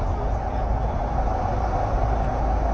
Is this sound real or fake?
real